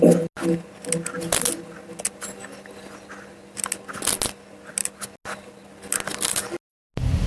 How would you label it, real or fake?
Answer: real